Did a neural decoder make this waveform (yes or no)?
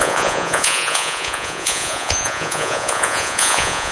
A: yes